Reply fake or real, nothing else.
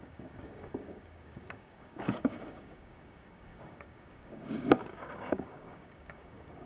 fake